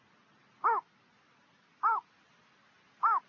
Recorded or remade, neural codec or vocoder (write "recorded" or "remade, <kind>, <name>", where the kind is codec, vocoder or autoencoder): recorded